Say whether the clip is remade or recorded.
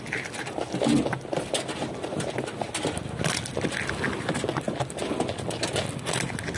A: recorded